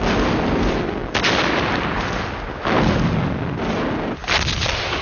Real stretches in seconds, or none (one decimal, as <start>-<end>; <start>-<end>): 0.0-5.0